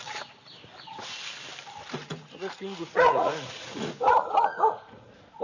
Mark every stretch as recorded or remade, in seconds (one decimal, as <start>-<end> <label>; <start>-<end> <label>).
0.0-2.0 recorded; 2.0-5.4 remade